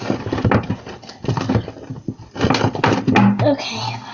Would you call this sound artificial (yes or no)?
no